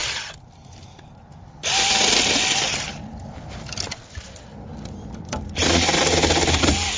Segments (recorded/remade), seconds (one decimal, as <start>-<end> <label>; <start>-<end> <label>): 0.0-7.0 recorded